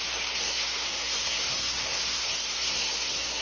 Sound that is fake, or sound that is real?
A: fake